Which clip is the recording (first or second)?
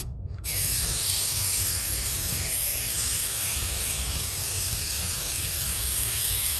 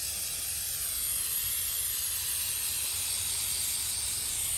second